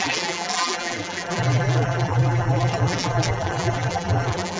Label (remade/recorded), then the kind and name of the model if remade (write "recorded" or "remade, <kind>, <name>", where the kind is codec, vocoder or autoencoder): remade, vocoder, BigVGAN v2